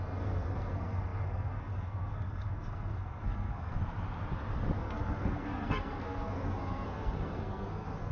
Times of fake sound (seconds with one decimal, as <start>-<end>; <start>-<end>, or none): 0.0-3.8; 4.8-8.1